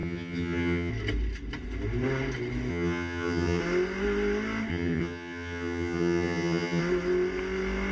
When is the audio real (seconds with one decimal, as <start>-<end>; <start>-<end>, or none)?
0.9-2.7; 3.6-4.7; 6.8-7.9